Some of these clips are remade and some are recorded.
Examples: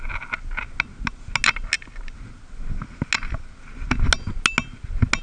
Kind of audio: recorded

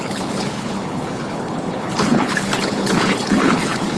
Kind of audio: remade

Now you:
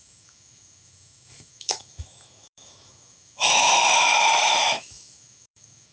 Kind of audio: remade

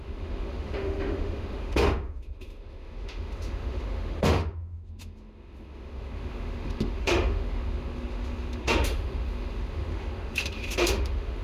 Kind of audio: remade